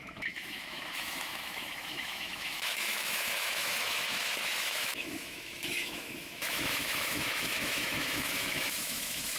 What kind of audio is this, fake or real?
fake